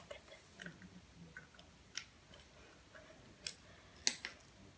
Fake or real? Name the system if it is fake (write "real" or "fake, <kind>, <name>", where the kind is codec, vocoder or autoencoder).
real